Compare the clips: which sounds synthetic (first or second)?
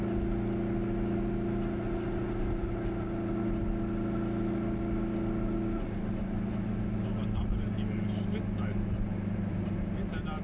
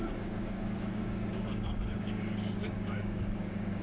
second